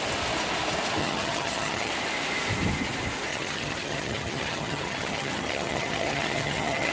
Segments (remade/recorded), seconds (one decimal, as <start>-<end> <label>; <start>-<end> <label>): 0.0-1.0 recorded; 1.0-1.9 remade; 1.9-3.3 recorded; 3.3-6.9 remade